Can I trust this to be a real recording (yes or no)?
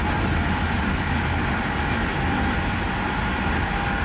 yes